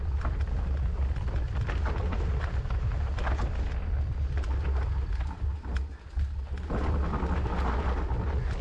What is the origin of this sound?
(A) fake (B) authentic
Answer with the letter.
B